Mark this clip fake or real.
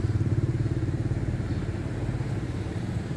fake